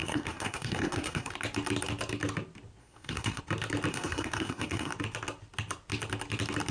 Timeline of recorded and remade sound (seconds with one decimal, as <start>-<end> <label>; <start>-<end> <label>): 0.0-1.3 remade; 1.3-2.8 recorded; 2.8-3.4 remade; 3.4-3.9 recorded; 3.9-4.9 remade; 4.9-6.7 recorded